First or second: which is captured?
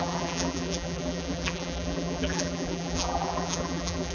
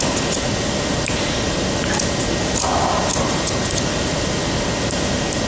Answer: second